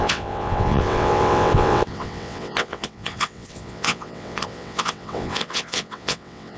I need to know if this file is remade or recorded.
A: remade